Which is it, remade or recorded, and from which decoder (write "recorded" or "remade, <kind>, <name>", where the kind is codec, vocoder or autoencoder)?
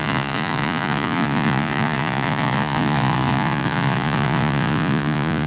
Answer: remade, vocoder, Vocos